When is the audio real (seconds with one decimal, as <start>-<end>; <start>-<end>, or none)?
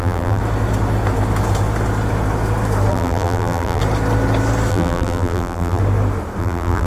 0.4-2.9; 3.8-4.7; 5.8-6.4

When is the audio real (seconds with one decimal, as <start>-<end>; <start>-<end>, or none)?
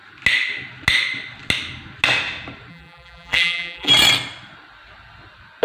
0.0-2.7; 3.9-5.6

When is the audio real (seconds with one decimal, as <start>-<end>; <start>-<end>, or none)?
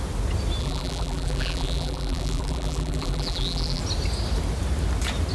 0.0-0.6; 3.8-5.3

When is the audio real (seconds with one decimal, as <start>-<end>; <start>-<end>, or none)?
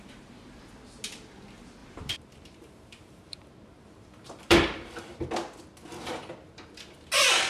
0.0-1.8; 5.2-7.5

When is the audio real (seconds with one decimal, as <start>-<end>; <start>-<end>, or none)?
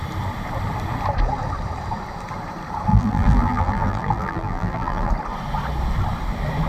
0.0-2.9; 5.1-6.7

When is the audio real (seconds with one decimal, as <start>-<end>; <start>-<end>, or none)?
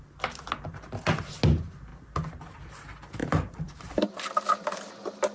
0.0-3.2; 4.2-5.3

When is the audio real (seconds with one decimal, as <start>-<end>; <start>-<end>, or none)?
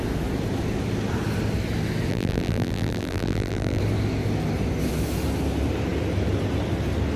0.0-2.1; 3.8-7.2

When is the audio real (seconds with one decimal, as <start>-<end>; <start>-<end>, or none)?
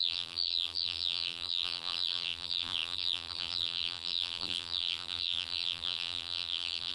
none